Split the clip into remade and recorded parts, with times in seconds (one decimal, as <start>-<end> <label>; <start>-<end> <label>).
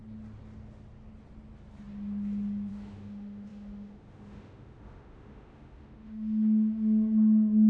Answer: 0.0-2.7 recorded; 2.7-7.7 remade